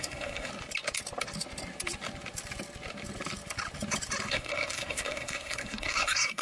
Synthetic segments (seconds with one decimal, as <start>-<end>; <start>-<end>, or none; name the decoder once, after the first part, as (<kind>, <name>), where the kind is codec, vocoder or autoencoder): 0.0-0.5 (codec, SNAC); 4.3-6.4